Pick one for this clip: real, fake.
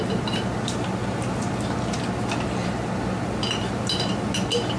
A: real